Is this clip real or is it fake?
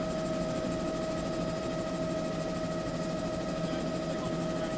real